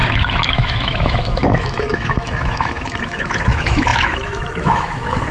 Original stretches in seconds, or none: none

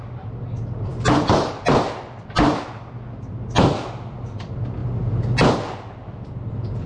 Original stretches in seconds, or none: 0.0-6.9

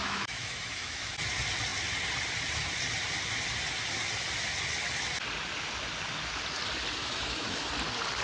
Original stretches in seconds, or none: 1.1-7.0; 7.7-8.2

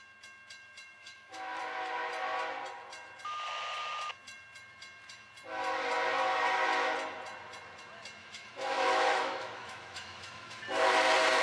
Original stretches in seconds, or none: 0.0-1.0; 1.6-8.2; 10.6-11.4

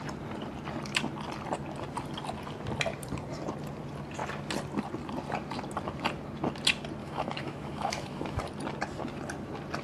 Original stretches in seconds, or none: 0.0-7.0; 8.4-9.8

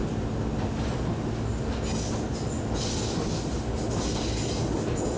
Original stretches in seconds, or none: 0.0-5.2